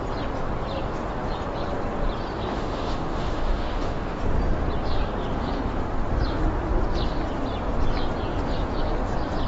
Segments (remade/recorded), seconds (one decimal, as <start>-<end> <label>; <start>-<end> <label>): 0.0-2.5 recorded; 2.5-4.2 remade; 4.2-9.5 recorded